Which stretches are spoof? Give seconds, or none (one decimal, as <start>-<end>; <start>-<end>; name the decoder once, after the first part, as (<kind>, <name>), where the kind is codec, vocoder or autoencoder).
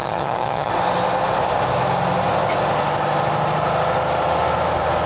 0.0-0.7 (vocoder, HiFi-GAN)